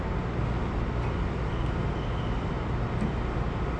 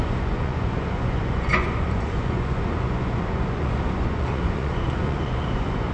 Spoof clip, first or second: second